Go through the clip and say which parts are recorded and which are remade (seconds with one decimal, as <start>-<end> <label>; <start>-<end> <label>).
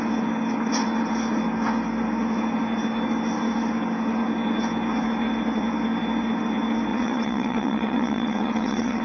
0.0-6.9 recorded; 6.9-9.0 remade